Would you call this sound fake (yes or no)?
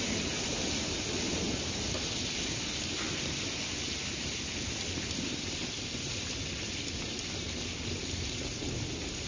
no